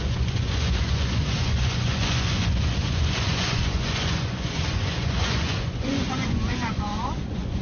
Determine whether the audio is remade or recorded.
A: remade